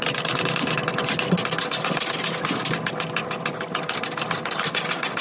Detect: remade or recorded recorded